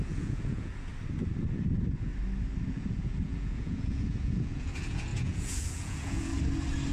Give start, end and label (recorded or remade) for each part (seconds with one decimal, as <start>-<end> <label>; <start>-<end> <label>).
0.0-0.9 remade; 0.9-2.7 recorded; 2.7-6.3 remade; 6.3-6.9 recorded